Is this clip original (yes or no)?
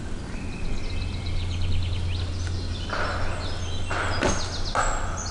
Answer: yes